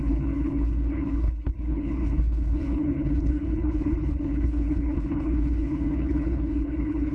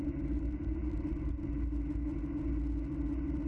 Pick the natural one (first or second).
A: second